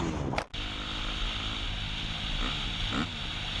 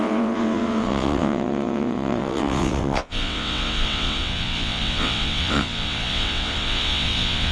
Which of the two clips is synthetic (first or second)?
second